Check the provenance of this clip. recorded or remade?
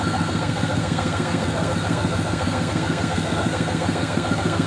remade